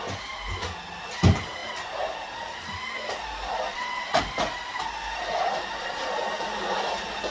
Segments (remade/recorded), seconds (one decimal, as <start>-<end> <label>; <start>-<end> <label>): 0.0-3.7 recorded; 3.7-4.2 remade; 4.2-7.3 recorded